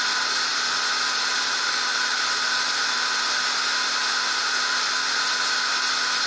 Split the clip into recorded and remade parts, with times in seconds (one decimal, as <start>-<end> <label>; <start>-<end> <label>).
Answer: 0.0-6.3 recorded